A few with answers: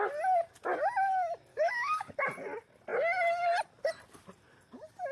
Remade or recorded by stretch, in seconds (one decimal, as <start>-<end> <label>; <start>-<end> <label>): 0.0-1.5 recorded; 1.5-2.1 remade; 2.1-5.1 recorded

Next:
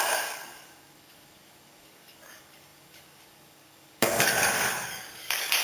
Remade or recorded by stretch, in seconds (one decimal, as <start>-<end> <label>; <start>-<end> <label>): 0.0-5.6 remade

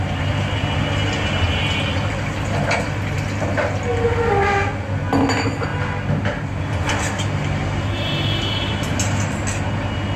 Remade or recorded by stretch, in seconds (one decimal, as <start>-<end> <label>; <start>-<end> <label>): 0.0-10.2 recorded

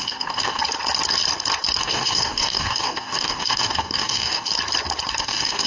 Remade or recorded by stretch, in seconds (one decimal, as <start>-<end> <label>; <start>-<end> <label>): 0.0-0.6 remade; 0.6-1.8 recorded; 1.8-4.5 remade; 4.5-5.2 recorded; 5.2-5.7 remade

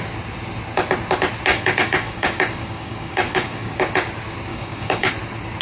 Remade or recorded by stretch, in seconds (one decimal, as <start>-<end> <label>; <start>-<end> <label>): 0.0-1.5 recorded; 1.5-3.9 remade; 3.9-4.5 recorded; 4.5-5.1 remade; 5.1-5.6 recorded